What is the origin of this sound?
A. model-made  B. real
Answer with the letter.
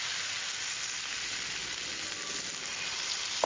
B